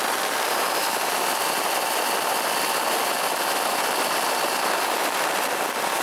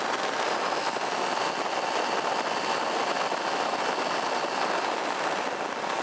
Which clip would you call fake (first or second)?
first